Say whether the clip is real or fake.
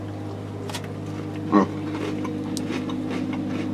real